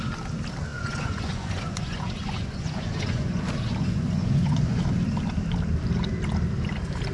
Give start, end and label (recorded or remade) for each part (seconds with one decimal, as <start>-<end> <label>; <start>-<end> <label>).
0.0-0.7 recorded; 0.7-3.4 remade; 3.4-3.8 recorded; 3.8-4.8 remade; 4.8-7.1 recorded